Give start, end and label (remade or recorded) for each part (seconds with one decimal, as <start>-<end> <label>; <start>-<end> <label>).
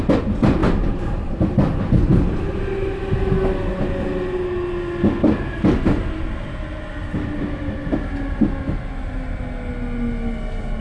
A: 0.0-0.6 recorded; 0.6-1.3 remade; 1.3-10.8 recorded